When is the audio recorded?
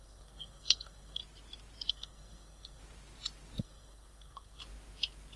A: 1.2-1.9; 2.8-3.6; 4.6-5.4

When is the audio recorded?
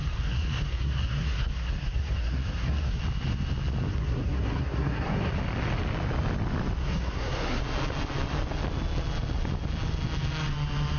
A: 3.0-3.9; 5.3-6.8; 7.6-11.0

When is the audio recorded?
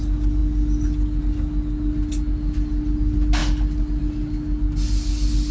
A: 0.0-5.5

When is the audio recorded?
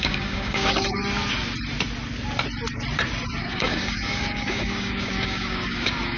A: 1.0-3.4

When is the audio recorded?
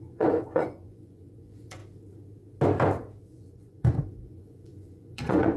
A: 1.8-3.2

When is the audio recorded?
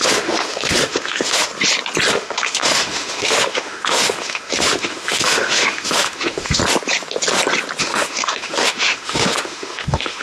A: 1.5-2.1; 6.6-7.8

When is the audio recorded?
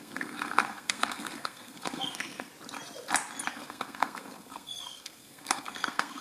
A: 2.5-3.5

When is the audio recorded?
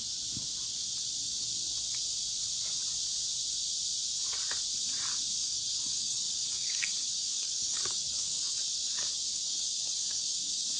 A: 0.0-5.4